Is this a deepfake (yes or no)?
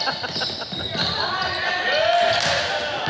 no